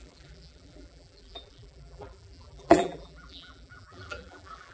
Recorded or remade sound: remade